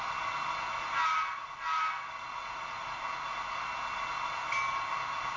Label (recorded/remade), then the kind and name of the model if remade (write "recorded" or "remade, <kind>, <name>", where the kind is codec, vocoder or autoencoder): recorded